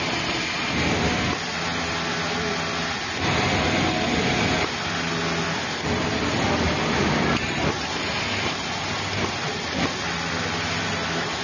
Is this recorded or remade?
recorded